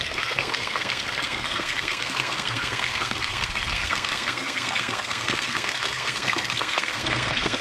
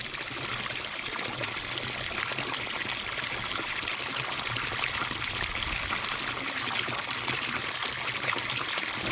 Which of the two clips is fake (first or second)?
first